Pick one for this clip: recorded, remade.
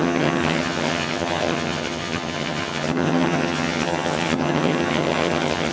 remade